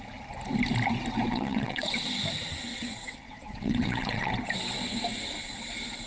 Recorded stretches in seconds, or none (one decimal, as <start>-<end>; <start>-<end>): 0.0-1.3; 2.1-2.7; 4.3-6.1